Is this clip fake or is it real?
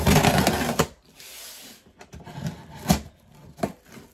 real